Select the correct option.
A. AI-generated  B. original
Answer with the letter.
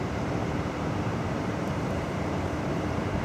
A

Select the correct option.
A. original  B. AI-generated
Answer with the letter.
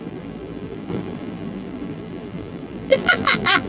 B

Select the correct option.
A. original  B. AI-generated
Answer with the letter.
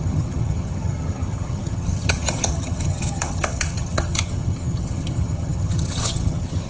B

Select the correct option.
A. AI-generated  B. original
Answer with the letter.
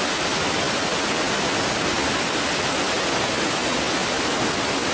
B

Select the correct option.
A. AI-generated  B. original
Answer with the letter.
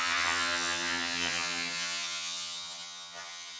A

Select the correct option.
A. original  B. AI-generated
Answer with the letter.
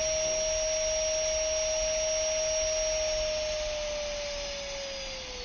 A